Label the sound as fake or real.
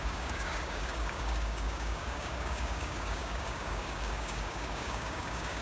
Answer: fake